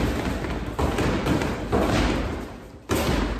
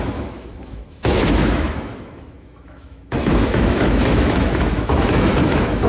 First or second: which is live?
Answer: first